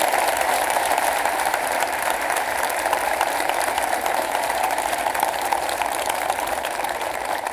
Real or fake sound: fake